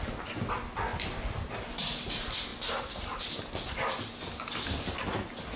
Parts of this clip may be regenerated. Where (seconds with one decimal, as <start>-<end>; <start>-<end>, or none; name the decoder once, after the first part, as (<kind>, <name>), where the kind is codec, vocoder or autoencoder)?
2.5-5.6 (vocoder, BigVGAN v2)